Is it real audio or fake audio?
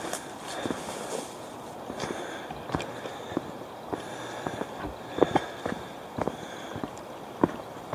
real